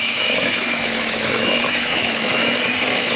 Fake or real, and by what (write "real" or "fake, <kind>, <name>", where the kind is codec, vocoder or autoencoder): fake, autoencoder, DAC-VAE